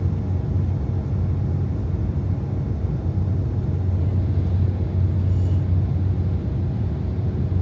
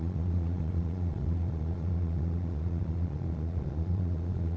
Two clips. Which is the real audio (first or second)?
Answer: first